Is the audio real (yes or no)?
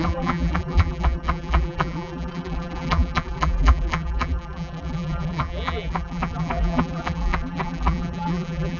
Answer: no